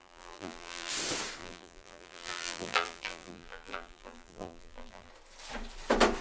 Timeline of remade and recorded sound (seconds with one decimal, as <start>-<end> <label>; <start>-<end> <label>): 0.0-0.9 remade; 0.9-1.4 recorded; 1.4-5.1 remade; 5.1-6.2 recorded